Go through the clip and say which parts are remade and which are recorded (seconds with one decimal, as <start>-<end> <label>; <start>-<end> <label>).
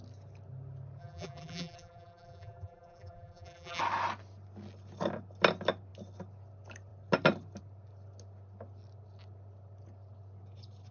0.0-1.0 recorded; 1.0-3.8 remade; 3.8-10.9 recorded